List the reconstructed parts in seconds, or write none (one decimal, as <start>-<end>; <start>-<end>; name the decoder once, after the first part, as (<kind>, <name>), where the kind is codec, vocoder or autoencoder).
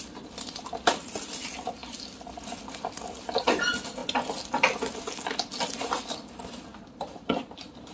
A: none